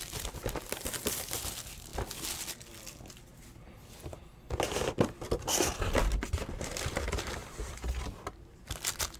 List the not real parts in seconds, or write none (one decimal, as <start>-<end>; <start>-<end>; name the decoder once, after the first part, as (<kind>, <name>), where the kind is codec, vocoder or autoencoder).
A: 0.0-1.9 (vocoder, BigVGAN v2); 6.4-7.4